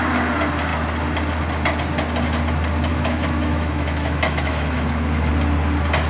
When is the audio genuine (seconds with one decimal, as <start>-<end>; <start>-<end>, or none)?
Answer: 0.0-2.9; 5.3-6.1